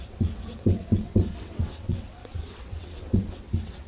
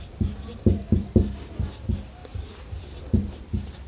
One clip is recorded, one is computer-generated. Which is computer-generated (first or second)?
first